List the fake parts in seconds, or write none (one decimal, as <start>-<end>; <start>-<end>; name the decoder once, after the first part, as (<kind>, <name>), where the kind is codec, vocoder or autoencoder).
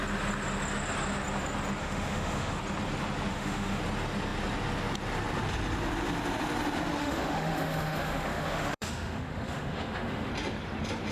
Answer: 1.8-2.6 (autoencoder, DAC-VAE); 3.3-3.8; 7.0-10.3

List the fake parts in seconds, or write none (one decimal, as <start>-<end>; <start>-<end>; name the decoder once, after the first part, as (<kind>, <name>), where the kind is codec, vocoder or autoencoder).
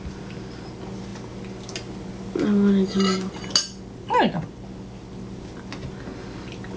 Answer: none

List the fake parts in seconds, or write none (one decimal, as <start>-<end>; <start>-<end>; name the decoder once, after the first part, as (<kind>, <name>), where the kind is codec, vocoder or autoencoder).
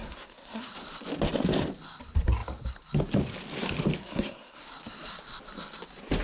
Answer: 0.0-0.7 (codec, SNAC); 4.0-4.6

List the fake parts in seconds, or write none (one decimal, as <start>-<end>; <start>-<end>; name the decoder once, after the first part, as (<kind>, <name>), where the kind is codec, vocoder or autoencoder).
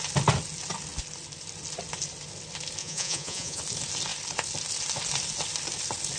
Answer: 2.8-3.6 (vocoder, Vocos)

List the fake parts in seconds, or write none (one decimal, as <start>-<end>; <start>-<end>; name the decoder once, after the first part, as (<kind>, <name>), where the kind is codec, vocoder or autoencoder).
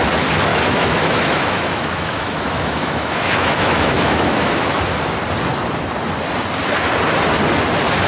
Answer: 0.5-4.8 (autoencoder, DAC-VAE)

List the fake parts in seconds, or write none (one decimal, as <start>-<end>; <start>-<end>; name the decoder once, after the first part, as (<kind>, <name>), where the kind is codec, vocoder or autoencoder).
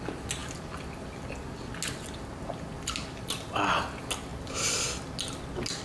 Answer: none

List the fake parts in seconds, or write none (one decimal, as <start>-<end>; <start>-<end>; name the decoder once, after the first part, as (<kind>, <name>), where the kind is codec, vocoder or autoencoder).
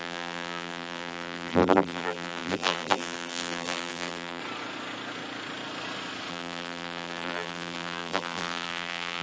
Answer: 0.0-4.4 (vocoder, BigVGAN v2); 6.3-9.2